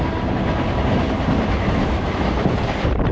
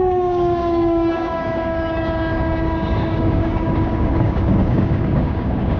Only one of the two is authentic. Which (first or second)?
first